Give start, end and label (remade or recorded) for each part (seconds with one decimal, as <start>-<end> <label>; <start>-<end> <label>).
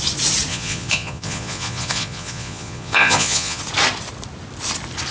0.0-0.5 recorded; 0.5-3.6 remade; 3.6-5.1 recorded